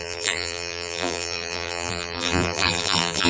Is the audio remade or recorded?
remade